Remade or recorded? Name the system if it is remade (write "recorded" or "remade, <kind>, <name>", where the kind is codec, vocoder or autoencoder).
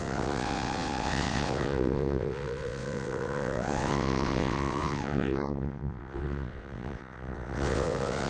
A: remade, vocoder, WaveNeXt